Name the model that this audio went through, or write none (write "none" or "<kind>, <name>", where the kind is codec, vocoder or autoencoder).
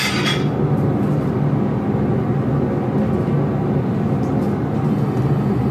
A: none